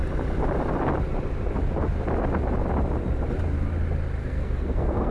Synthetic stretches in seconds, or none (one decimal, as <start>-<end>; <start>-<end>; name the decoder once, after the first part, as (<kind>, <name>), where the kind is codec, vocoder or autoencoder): 4.2-5.1 (codec, SNAC)